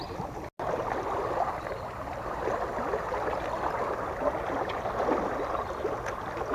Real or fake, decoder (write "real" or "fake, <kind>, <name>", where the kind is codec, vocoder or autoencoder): real